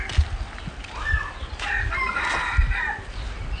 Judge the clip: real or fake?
real